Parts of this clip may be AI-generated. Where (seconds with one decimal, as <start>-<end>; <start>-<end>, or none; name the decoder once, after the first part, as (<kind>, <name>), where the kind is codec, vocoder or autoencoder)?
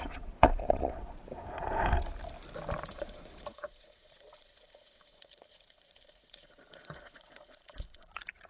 0.0-1.2 (vocoder, Vocos); 2.9-8.5